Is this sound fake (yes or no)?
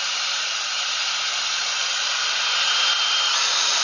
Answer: no